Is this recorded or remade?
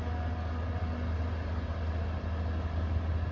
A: recorded